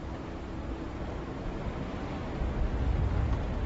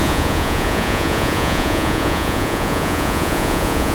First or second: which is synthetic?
second